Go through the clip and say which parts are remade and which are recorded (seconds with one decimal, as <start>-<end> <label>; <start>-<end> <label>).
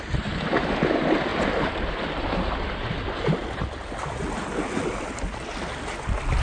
0.0-6.4 recorded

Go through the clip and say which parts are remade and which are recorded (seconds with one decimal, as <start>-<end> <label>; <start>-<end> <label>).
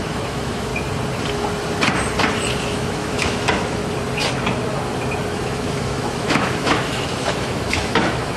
0.0-0.7 remade; 0.7-2.6 recorded; 2.6-3.8 remade; 3.8-5.3 recorded; 5.3-8.4 remade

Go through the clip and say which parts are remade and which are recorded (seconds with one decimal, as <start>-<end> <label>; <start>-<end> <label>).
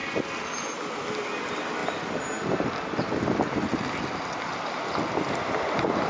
0.0-6.1 recorded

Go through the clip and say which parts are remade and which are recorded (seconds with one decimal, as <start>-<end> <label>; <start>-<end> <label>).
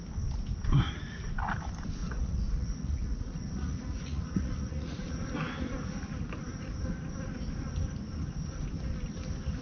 0.0-2.0 recorded; 2.0-5.2 remade; 5.2-9.6 recorded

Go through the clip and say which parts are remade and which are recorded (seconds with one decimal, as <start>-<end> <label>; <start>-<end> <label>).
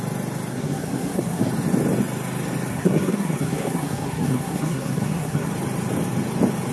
0.0-0.5 recorded; 0.5-1.5 remade; 1.5-2.7 recorded; 2.7-5.5 remade; 5.5-6.7 recorded